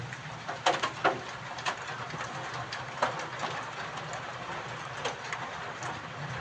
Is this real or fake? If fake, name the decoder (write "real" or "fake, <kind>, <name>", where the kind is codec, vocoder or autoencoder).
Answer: real